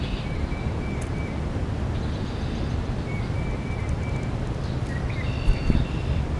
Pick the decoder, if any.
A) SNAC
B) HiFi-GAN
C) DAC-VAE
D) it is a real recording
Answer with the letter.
D